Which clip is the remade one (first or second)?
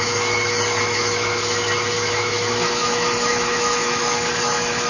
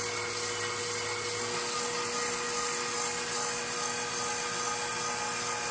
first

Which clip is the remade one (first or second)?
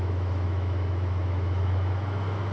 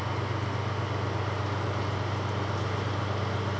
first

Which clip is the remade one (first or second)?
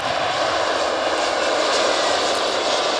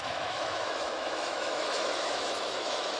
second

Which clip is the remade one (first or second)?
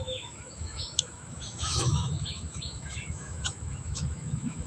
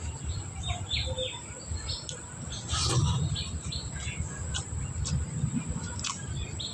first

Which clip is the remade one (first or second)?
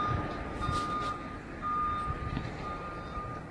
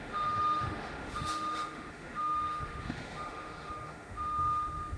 second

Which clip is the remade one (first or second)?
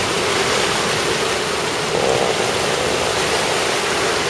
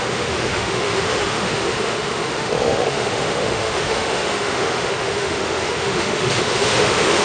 second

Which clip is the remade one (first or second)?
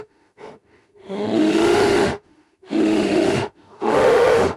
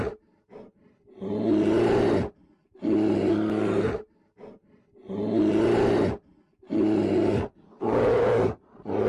first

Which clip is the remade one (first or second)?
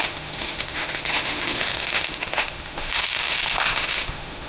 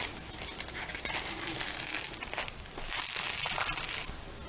first